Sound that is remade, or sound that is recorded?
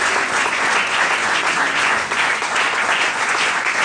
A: remade